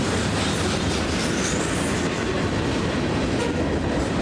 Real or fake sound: real